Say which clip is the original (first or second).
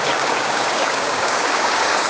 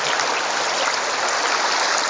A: second